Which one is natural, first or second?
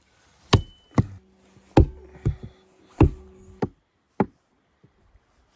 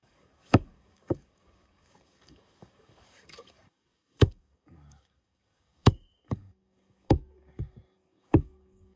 first